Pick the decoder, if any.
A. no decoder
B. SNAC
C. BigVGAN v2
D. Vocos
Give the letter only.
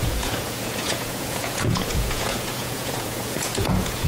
D